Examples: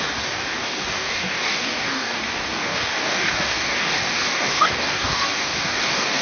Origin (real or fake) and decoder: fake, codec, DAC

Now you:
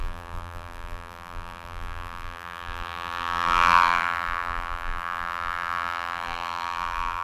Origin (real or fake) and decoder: fake, vocoder, BigVGAN v2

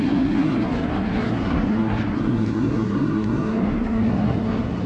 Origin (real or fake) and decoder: fake, codec, SNAC